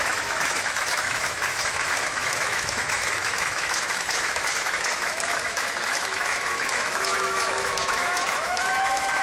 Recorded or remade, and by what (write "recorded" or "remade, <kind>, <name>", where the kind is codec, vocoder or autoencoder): remade, autoencoder, DAC-VAE